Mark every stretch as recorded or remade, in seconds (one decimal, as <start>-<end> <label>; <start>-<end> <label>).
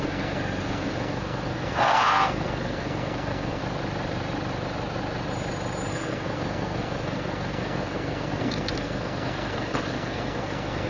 0.0-3.6 remade; 3.6-5.9 recorded; 5.9-10.9 remade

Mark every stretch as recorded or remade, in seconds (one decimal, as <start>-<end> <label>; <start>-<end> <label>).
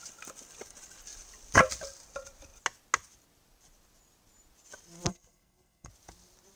0.0-5.1 recorded; 5.1-5.9 remade; 5.9-6.6 recorded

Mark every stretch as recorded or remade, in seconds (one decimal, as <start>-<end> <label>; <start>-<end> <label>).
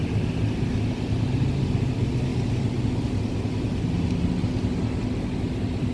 0.0-5.9 recorded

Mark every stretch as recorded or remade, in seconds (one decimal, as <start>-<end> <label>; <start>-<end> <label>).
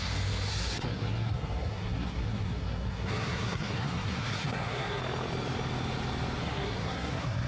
0.0-0.5 recorded; 0.5-5.0 remade; 5.0-6.4 recorded; 6.4-7.5 remade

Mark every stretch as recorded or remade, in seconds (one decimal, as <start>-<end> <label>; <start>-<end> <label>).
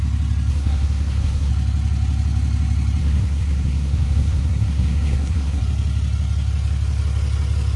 0.0-0.5 recorded; 0.5-1.5 remade; 1.5-3.0 recorded; 3.0-5.6 remade; 5.6-7.8 recorded